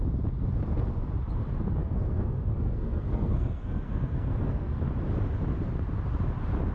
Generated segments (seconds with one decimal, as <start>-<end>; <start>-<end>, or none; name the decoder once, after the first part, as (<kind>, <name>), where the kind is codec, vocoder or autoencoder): 1.8-4.8 (codec, SNAC)